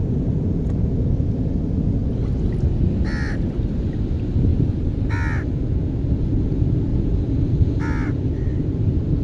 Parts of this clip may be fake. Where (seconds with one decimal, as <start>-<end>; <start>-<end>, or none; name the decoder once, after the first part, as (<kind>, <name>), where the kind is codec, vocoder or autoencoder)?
4.5-5.1 (vocoder, BigVGAN v2); 6.9-7.8